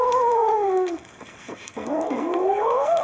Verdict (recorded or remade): remade